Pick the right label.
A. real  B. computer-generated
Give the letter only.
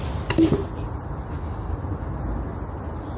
A